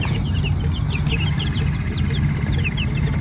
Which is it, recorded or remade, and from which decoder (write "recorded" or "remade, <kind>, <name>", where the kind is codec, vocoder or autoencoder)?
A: recorded